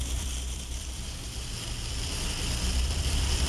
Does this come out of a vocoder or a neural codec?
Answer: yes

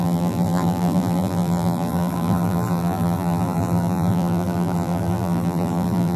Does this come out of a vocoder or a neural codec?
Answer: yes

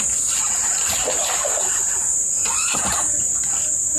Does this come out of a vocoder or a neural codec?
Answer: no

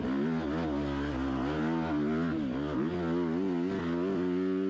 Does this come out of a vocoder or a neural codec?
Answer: no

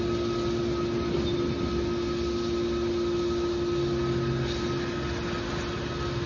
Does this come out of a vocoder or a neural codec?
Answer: no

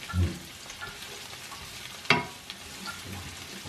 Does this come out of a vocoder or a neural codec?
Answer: no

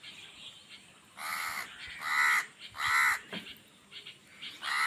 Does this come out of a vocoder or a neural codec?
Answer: no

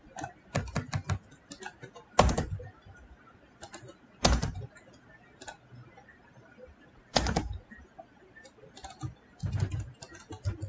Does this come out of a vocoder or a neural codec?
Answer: no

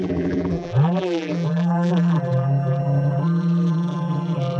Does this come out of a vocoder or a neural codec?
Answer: yes